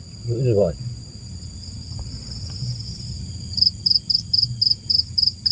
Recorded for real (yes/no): yes